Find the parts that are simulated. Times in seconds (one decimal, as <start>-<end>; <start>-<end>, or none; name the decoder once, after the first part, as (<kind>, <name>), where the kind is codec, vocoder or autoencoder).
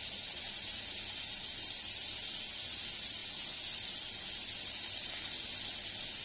none